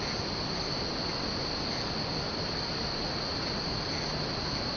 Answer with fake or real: real